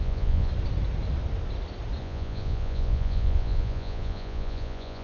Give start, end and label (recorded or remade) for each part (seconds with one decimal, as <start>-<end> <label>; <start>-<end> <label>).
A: 0.0-0.5 remade; 0.5-2.0 recorded; 2.0-5.0 remade